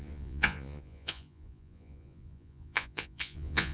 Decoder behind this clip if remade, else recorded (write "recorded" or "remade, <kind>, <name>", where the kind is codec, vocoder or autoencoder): remade, vocoder, Vocos